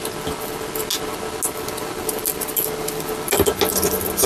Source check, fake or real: real